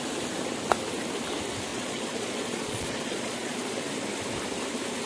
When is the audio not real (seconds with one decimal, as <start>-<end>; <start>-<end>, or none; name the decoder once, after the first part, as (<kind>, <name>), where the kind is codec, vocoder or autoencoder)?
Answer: 1.7-3.8 (vocoder, Vocos)